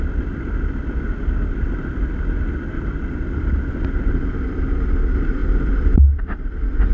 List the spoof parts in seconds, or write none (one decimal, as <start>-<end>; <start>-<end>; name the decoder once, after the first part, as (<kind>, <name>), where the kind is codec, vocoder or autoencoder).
none